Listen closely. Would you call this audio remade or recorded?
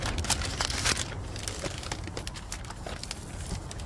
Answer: recorded